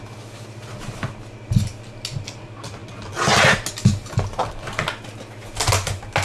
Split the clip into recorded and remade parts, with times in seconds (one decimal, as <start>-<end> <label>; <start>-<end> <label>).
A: 0.0-6.2 recorded